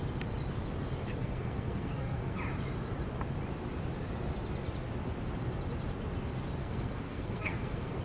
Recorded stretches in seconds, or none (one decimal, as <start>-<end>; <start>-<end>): 0.0-1.2; 2.4-6.6